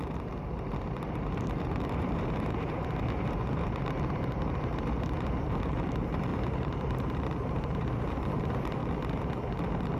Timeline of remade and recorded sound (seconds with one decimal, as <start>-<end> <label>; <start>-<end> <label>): 0.0-8.8 remade; 8.8-10.0 recorded